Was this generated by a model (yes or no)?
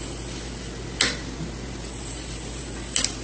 no